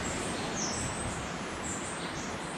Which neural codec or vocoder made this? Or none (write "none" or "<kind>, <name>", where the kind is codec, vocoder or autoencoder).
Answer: vocoder, BigVGAN v2